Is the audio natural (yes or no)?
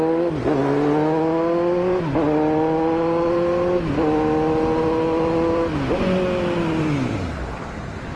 yes